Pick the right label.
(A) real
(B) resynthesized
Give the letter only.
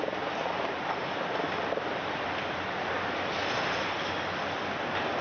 A